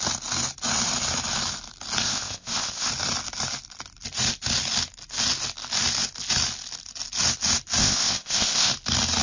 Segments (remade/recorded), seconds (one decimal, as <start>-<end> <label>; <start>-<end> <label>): 0.0-2.0 recorded; 2.0-2.9 remade; 2.9-7.8 recorded; 7.8-8.7 remade; 8.7-9.2 recorded